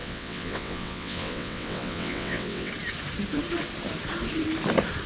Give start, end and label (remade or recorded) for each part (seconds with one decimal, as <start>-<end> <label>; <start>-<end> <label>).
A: 0.0-2.7 remade; 2.7-5.1 recorded